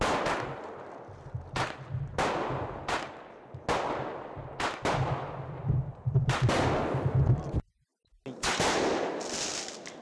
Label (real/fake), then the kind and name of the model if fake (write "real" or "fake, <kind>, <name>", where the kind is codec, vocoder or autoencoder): real